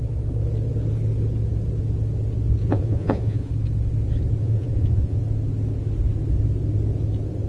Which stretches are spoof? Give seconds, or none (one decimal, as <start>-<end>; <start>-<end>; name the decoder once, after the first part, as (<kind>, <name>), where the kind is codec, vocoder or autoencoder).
2.6-3.5 (vocoder, Vocos); 4.4-5.2